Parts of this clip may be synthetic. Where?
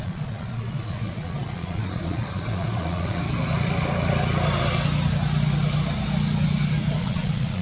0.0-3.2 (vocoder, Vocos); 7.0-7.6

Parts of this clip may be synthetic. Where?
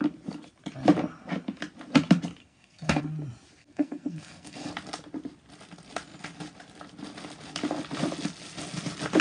2.4-3.0 (codec, SNAC); 3.6-4.7